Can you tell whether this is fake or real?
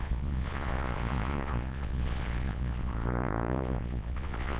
fake